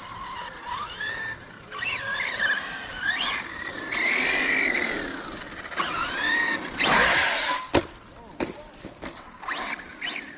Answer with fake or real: real